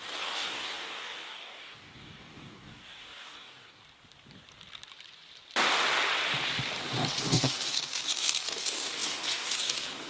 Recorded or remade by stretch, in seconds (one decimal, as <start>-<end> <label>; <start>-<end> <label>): 0.0-3.8 remade; 3.8-7.2 recorded; 7.2-10.1 remade